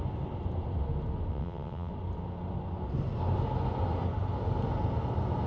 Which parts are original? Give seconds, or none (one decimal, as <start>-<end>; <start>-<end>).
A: 0.0-1.3; 1.9-5.5